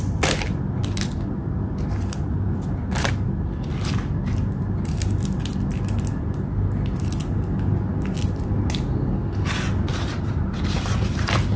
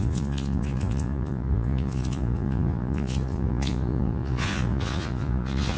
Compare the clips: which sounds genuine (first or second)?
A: first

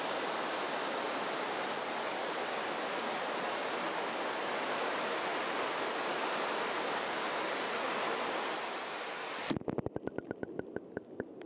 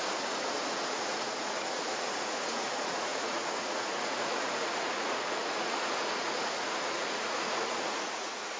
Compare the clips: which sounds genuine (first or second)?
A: first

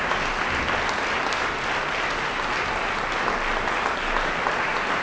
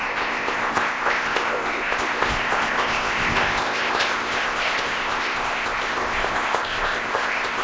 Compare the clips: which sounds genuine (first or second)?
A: first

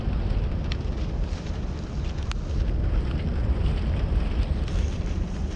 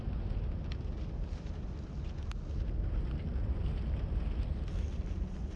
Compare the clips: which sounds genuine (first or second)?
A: second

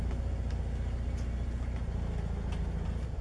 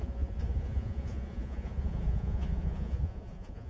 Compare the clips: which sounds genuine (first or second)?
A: first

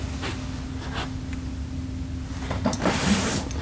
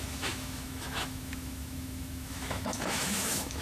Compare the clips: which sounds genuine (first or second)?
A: first